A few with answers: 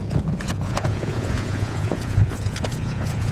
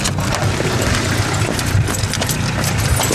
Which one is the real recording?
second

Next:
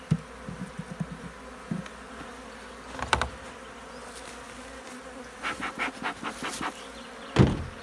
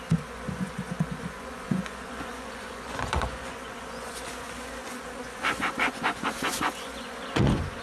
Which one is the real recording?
first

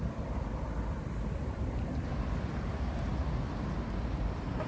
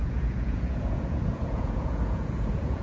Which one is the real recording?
first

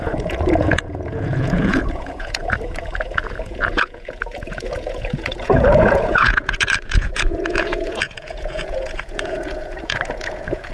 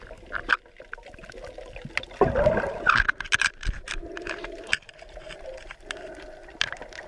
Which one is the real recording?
second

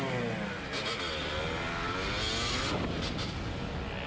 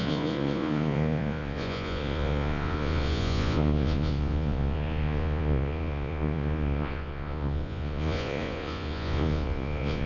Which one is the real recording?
first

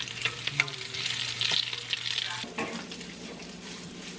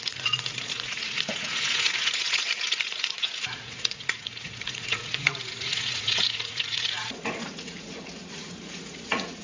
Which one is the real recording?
first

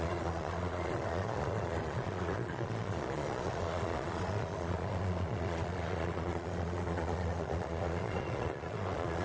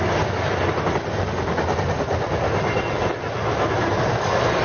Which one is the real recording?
second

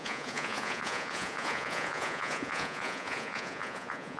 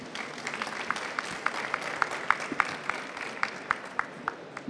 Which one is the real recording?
second